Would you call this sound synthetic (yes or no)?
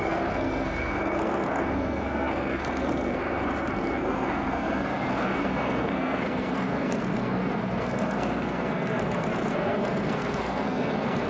yes